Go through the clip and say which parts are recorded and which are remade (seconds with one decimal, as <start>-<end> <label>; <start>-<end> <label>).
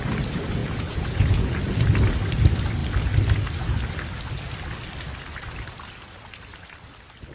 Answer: 0.0-0.6 recorded; 0.6-1.6 remade; 1.6-7.3 recorded